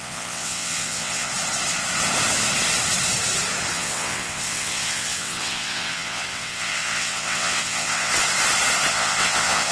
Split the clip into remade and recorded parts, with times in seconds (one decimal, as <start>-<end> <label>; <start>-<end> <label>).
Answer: 0.0-1.3 remade; 1.3-3.7 recorded; 3.7-8.1 remade; 8.1-8.9 recorded; 8.9-9.7 remade